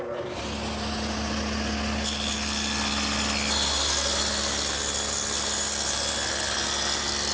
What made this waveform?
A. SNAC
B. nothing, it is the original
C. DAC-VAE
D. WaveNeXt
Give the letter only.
B